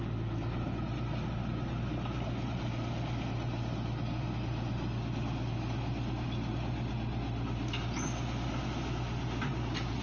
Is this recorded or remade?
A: recorded